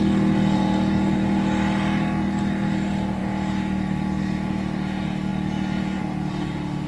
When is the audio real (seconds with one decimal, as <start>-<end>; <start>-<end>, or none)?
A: 0.0-6.9